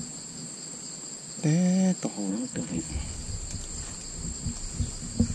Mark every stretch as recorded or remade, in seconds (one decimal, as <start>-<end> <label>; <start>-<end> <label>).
0.0-2.3 recorded; 2.3-2.9 remade; 2.9-5.3 recorded